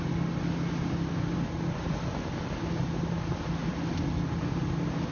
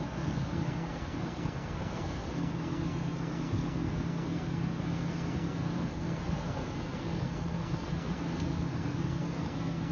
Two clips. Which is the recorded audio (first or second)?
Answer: first